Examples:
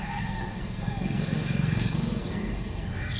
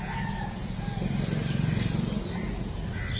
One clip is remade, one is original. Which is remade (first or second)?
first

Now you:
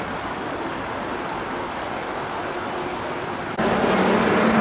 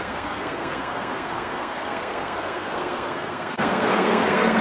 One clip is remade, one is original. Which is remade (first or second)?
second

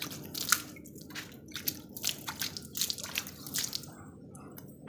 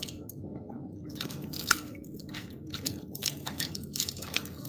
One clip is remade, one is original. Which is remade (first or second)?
second